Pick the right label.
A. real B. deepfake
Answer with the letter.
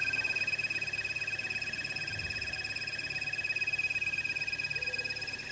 A